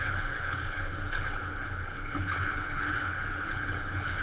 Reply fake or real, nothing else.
fake